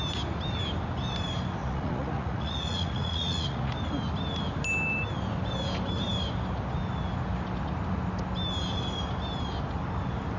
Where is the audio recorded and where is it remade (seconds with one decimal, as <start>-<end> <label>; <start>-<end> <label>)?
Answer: 0.0-1.6 recorded; 1.6-3.7 remade; 3.7-10.4 recorded